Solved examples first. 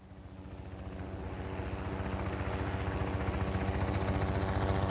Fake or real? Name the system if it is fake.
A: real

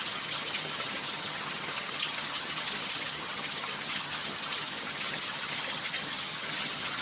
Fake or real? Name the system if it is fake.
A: fake, vocoder, HiFi-GAN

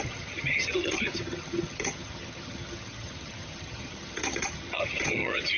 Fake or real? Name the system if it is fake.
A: fake, vocoder, HiFi-GAN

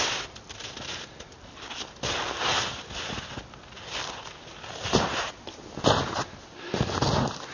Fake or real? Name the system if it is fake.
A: real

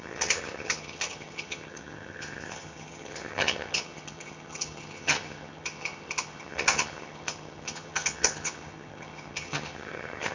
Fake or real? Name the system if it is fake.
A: fake, vocoder, HiFi-GAN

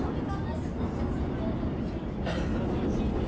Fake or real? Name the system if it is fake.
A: real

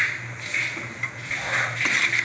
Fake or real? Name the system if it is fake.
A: real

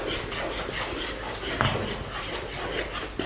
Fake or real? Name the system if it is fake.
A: real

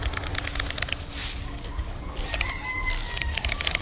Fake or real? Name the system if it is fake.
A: real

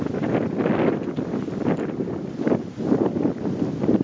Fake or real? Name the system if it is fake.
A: real